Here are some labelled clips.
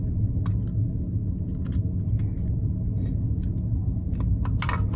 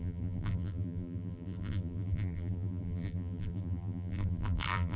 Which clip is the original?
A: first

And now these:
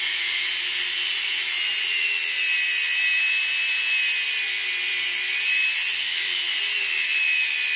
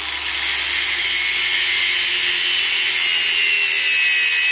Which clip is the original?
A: second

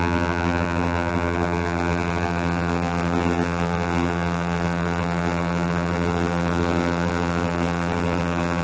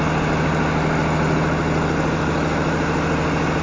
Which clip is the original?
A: second